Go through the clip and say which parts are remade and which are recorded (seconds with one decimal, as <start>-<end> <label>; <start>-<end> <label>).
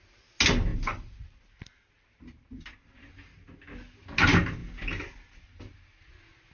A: 0.0-0.7 recorded; 0.7-1.2 remade; 1.2-6.5 recorded